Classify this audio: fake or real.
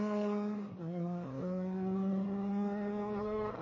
fake